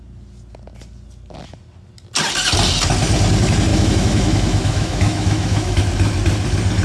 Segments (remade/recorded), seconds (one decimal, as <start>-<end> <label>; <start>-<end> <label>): 0.0-3.7 recorded; 3.7-5.8 remade; 5.8-6.8 recorded